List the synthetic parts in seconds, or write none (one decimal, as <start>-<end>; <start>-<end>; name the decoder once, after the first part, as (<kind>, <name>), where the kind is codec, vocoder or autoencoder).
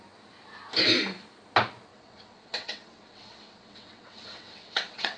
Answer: 1.9-5.2 (vocoder, WaveNeXt)